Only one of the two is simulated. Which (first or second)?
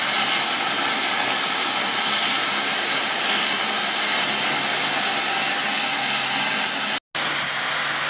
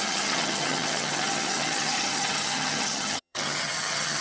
second